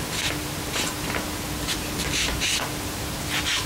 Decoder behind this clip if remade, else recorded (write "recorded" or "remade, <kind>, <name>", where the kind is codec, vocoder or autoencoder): recorded